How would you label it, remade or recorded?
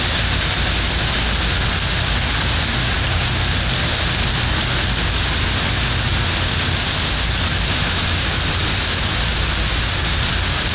recorded